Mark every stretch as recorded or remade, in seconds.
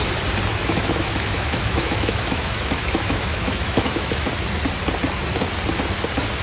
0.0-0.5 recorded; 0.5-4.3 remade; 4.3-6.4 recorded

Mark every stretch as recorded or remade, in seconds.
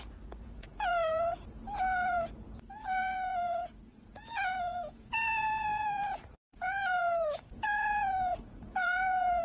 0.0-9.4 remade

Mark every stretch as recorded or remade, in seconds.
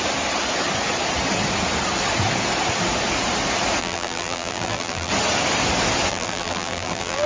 0.0-3.8 recorded; 3.8-5.1 remade; 5.1-6.1 recorded; 6.1-7.3 remade